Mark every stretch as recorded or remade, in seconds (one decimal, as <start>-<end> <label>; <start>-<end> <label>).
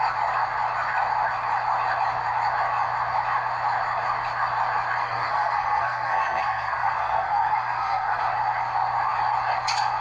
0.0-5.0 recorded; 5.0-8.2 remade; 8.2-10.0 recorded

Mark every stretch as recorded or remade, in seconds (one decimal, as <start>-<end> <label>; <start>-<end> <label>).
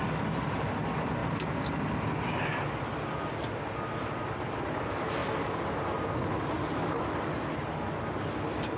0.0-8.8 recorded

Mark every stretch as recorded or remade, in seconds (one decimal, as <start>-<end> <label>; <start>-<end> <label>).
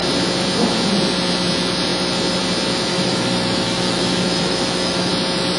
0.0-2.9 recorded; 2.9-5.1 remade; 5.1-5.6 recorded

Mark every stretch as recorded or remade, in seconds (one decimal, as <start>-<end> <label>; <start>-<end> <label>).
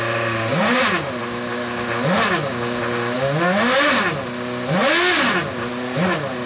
0.0-0.5 recorded; 0.5-1.2 remade; 1.2-6.5 recorded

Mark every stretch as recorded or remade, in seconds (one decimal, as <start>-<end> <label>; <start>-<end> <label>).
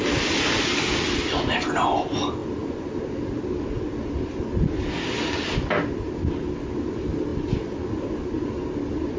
0.0-9.2 recorded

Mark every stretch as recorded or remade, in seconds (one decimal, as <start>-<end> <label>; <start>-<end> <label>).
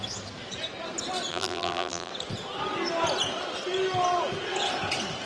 0.0-1.3 recorded; 1.3-2.1 remade; 2.1-5.3 recorded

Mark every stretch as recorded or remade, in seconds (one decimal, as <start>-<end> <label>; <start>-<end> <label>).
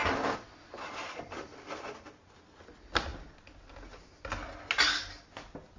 0.0-5.8 recorded